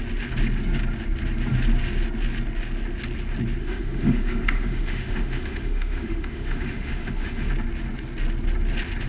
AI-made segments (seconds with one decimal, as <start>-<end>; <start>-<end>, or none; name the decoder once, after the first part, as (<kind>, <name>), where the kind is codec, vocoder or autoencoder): 3.6-7.5 (autoencoder, DAC-VAE)

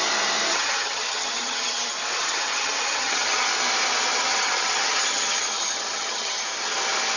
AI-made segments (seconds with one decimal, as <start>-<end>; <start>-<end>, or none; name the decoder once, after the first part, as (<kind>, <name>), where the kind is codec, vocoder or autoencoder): 0.5-1.8 (vocoder, HiFi-GAN); 2.2-3.5; 4.3-6.4

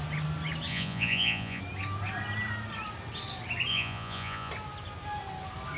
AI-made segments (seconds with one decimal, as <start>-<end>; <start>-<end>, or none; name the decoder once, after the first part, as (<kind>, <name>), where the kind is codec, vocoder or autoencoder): 0.7-1.6 (vocoder, Vocos); 3.7-4.5

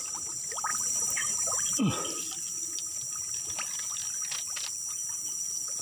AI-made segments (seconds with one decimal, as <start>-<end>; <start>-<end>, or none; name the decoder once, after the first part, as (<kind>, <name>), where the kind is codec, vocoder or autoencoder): 0.7-1.8 (vocoder, BigVGAN v2)

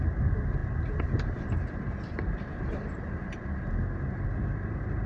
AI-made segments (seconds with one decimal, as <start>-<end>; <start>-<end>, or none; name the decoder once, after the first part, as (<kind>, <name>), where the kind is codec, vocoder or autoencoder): 0.6-3.7 (vocoder, BigVGAN v2)

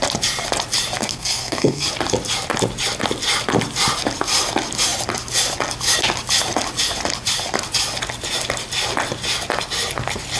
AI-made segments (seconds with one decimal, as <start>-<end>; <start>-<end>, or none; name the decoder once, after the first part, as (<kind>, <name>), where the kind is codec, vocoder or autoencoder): 1.0-1.9 (codec, SNAC)